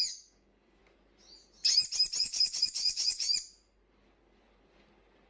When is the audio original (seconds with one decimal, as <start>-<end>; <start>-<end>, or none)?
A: 0.8-2.2; 3.3-5.3